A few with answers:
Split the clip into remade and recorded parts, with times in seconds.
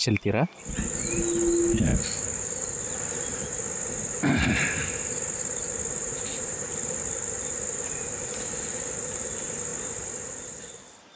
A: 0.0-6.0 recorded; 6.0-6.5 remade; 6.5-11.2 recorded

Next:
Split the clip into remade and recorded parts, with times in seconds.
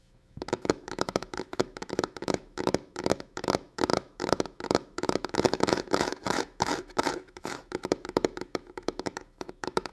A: 0.0-9.9 remade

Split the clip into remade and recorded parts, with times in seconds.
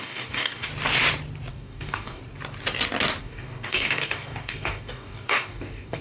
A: 0.0-0.7 remade; 0.7-1.5 recorded; 1.5-2.2 remade; 2.2-3.2 recorded; 3.2-6.0 remade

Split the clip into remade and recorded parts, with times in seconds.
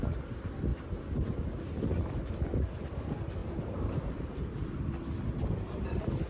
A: 0.0-3.4 recorded; 3.4-4.5 remade; 4.5-6.3 recorded